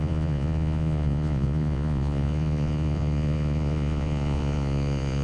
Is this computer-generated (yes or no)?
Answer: yes